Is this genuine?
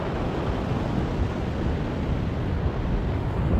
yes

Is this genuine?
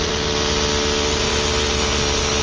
yes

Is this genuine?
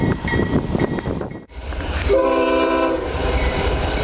no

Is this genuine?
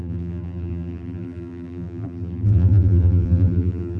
no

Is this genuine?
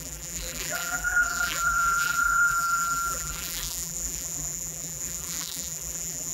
no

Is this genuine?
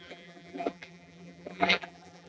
no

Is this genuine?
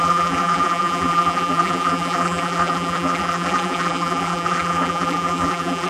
no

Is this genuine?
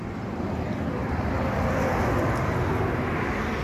yes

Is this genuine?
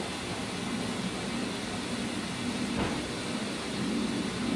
yes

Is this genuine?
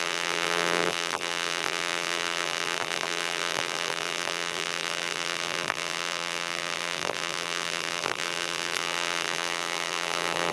no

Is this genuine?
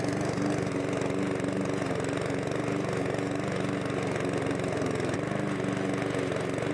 yes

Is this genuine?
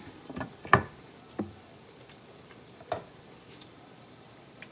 no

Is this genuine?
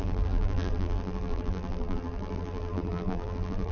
no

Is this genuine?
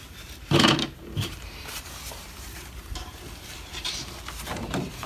no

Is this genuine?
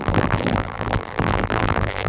no